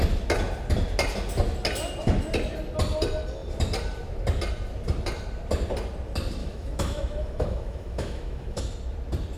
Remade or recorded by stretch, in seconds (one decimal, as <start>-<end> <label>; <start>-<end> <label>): 0.0-6.4 recorded; 6.4-8.6 remade; 8.6-9.4 recorded